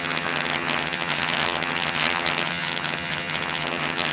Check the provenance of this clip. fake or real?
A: fake